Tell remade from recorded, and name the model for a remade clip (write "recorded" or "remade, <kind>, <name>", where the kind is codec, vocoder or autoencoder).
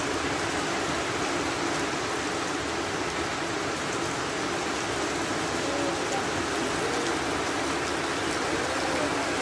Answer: recorded